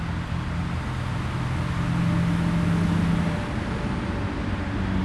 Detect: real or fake real